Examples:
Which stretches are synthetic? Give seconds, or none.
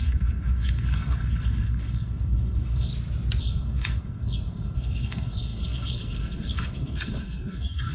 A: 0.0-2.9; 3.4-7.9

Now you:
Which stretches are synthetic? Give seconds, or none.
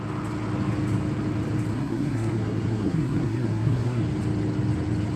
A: 1.7-4.0